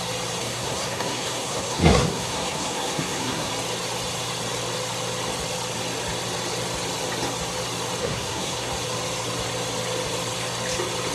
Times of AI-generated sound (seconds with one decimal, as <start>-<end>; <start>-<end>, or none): 0.4-3.5; 8.0-8.7